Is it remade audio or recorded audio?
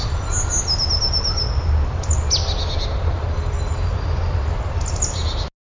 recorded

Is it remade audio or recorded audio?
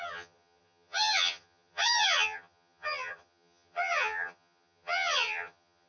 remade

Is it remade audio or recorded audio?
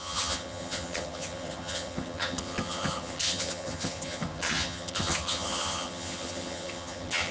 remade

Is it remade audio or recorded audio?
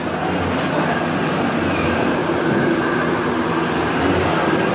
recorded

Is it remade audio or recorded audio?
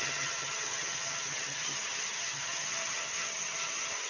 remade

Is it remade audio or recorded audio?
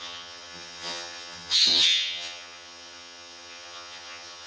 remade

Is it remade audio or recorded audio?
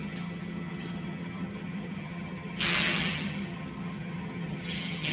remade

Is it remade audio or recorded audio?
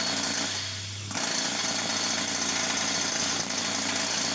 recorded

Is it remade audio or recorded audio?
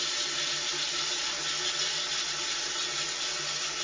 recorded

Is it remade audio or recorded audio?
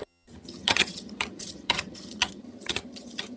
remade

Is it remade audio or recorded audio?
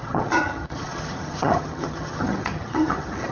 remade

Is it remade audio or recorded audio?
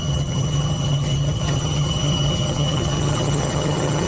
remade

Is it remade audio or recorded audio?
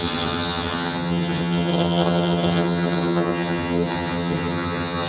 remade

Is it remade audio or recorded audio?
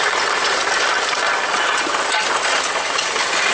recorded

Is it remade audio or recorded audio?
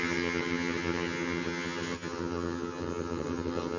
remade